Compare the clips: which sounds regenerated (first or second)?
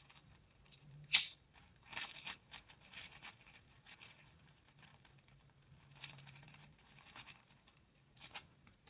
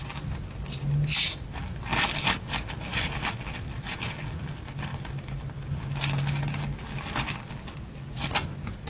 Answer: first